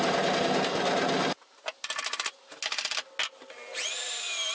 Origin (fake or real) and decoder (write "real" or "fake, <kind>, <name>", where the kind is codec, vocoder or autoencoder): real